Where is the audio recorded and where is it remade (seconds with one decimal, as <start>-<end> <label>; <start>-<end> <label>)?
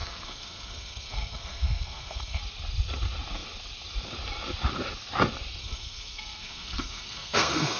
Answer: 0.0-2.4 remade; 2.4-5.6 recorded; 5.6-7.8 remade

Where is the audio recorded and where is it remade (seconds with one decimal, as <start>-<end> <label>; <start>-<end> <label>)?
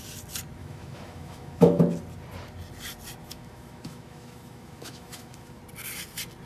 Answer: 0.0-0.6 recorded; 0.6-1.8 remade; 1.8-3.2 recorded; 3.2-5.6 remade; 5.6-6.5 recorded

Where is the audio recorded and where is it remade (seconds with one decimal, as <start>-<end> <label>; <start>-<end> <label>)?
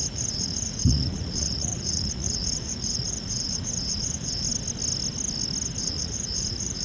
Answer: 0.0-4.5 remade; 4.5-5.8 recorded; 5.8-6.8 remade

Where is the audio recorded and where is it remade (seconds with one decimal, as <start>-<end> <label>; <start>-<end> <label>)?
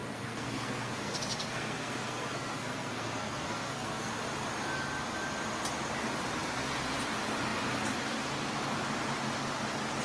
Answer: 0.0-4.1 remade; 4.1-10.0 recorded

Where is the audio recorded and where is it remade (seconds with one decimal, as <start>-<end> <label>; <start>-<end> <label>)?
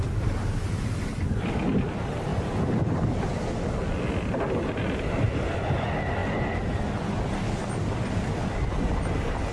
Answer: 0.0-9.5 recorded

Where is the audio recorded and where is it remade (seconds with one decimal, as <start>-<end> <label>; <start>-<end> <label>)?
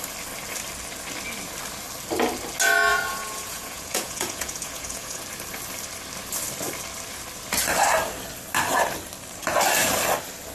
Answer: 0.0-2.9 recorded; 2.9-5.2 remade; 5.2-10.5 recorded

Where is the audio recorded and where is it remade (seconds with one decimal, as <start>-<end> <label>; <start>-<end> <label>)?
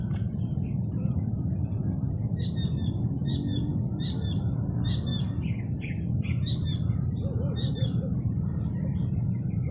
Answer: 0.0-5.1 remade; 5.1-7.7 recorded; 7.7-9.7 remade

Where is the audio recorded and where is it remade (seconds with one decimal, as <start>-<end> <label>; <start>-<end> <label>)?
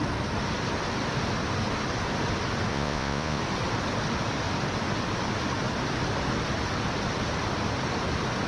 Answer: 0.0-2.7 recorded; 2.7-3.4 remade; 3.4-8.5 recorded